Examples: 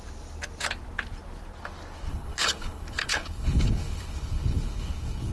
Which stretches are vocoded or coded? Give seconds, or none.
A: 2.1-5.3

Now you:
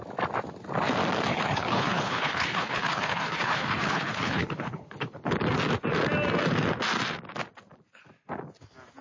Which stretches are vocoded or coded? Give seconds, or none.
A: 1.3-5.3

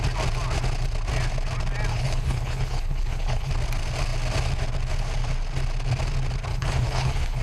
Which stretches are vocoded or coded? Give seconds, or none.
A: 1.9-3.5; 6.5-7.4

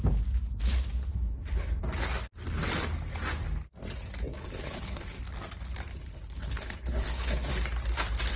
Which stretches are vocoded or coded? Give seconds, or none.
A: 1.1-1.8; 4.3-5.2; 6.0-7.5

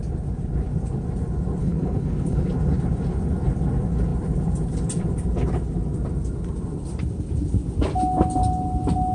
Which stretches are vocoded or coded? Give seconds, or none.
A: 1.6-2.5

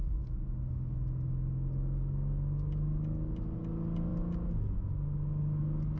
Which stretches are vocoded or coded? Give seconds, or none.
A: none

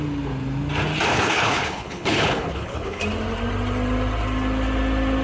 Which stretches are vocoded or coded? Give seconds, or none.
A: 1.1-3.0